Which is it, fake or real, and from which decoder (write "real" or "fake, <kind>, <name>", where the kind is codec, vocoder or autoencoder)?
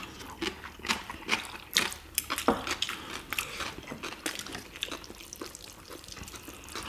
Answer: real